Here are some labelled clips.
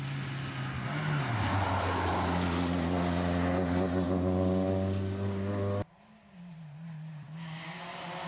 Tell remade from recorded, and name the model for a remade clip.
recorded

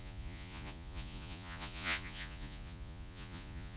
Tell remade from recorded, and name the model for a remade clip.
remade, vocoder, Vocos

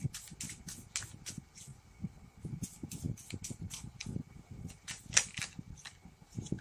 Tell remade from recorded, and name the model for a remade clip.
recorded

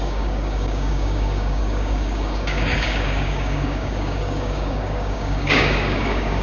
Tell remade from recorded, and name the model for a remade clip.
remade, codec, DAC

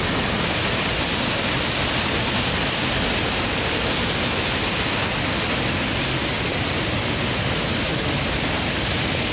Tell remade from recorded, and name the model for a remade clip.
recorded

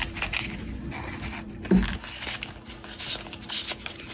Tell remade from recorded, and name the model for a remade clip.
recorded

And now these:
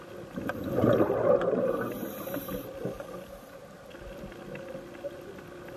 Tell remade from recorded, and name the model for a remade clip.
recorded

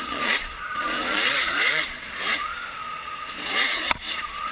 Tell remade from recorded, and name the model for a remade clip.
remade, vocoder, Vocos